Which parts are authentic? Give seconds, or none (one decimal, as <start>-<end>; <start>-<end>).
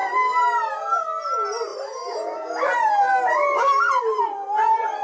0.0-5.0